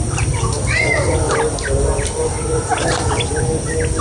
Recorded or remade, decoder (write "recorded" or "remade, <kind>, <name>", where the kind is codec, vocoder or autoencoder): recorded